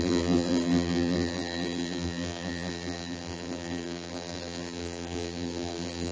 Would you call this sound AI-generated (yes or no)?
yes